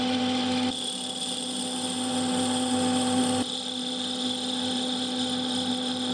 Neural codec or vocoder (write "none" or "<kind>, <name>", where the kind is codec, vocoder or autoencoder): none